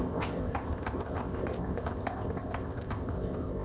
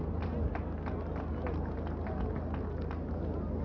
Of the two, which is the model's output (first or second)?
first